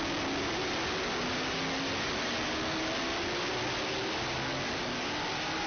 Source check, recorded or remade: recorded